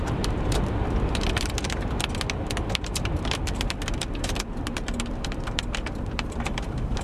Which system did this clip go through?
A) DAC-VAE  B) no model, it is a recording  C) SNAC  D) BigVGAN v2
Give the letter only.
D